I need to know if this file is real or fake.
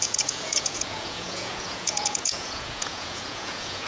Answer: fake